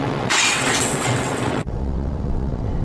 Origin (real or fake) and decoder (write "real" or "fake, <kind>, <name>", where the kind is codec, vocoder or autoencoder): fake, vocoder, WaveNeXt